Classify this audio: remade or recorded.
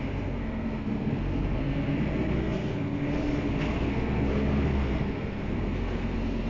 remade